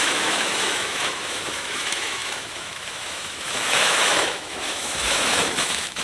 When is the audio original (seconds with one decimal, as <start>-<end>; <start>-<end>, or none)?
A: none